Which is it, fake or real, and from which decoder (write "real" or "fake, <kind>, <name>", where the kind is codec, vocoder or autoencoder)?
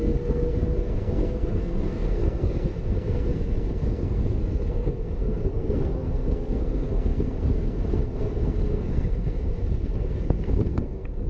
fake, codec, SNAC